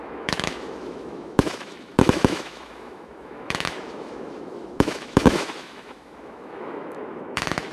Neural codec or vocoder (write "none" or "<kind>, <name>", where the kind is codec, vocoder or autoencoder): autoencoder, DAC-VAE